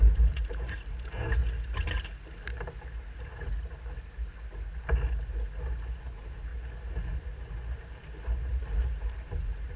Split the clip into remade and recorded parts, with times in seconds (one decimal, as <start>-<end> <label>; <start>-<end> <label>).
0.0-1.4 remade; 1.4-6.0 recorded; 6.0-6.5 remade; 6.5-7.8 recorded; 7.8-9.8 remade

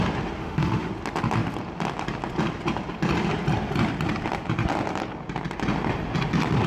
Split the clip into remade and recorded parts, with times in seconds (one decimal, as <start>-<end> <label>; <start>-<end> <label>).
0.0-0.4 recorded; 0.4-0.9 remade; 0.9-6.7 recorded

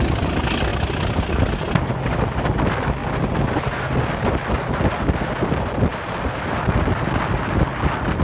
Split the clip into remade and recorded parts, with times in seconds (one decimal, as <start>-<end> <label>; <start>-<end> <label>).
0.0-8.2 recorded

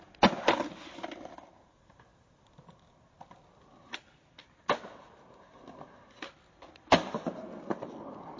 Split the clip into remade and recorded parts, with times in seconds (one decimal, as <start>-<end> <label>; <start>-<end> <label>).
0.0-8.4 recorded

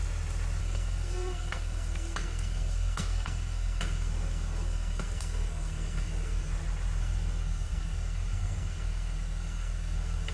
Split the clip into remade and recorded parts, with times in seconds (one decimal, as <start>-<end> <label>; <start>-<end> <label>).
0.0-0.6 recorded; 0.6-6.5 remade; 6.5-7.0 recorded; 7.0-10.3 remade